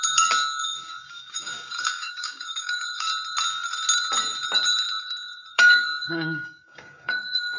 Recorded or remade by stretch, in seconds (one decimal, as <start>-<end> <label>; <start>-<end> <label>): 0.0-3.1 remade; 3.1-5.5 recorded; 5.5-7.6 remade